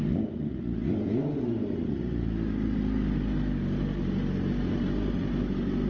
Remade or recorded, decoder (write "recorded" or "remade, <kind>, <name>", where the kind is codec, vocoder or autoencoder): recorded